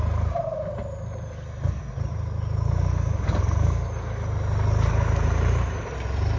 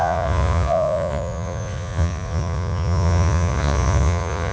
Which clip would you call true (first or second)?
first